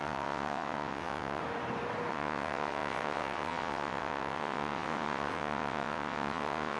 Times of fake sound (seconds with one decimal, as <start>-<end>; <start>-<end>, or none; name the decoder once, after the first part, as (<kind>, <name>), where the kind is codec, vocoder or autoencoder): 0.0-1.4 (vocoder, WaveNeXt); 2.1-6.8